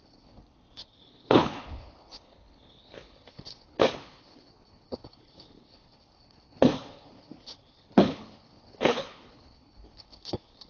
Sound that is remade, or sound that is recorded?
remade